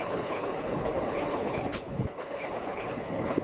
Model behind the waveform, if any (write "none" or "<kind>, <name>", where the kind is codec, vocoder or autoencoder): codec, HILCodec